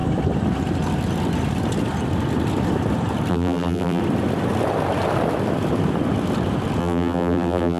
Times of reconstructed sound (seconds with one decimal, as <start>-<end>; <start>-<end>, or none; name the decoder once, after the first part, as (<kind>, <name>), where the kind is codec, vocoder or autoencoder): 3.3-4.0 (vocoder, BigVGAN v2); 6.8-7.8